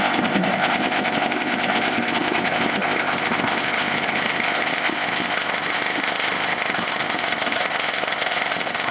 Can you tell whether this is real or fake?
fake